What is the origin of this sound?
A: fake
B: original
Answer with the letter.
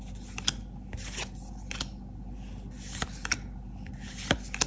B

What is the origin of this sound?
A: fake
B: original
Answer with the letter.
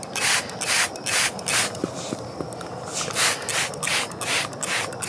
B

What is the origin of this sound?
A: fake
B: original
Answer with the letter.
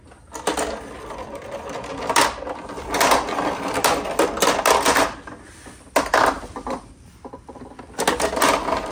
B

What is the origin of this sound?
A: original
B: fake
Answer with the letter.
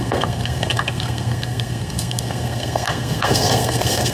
B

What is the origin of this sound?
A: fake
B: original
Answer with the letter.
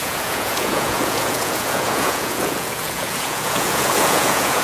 A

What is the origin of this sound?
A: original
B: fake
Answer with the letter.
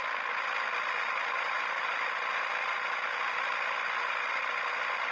A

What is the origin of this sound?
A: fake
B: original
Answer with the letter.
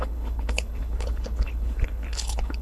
A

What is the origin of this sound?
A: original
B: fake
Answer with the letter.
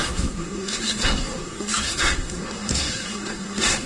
B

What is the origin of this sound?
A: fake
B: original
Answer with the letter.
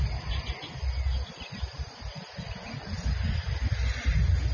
B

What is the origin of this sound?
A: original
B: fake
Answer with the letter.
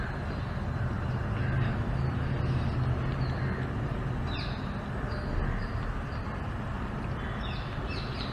A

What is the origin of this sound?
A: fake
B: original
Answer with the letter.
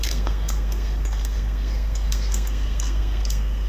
A